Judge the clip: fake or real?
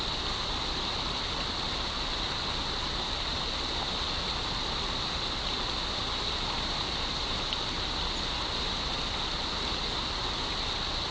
real